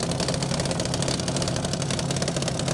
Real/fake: real